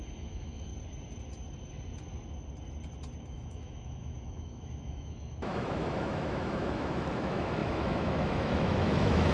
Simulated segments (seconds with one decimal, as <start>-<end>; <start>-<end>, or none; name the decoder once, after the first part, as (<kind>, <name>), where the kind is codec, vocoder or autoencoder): 0.0-0.7 (autoencoder, DAC-VAE); 3.2-9.3